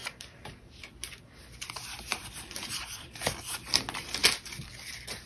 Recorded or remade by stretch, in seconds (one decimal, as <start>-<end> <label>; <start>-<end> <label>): 0.0-0.8 remade; 0.8-2.1 recorded; 2.1-3.2 remade; 3.2-5.3 recorded